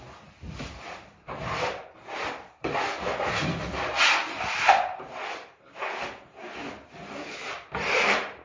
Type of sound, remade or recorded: recorded